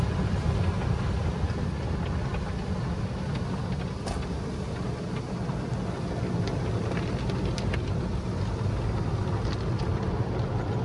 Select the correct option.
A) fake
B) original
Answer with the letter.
B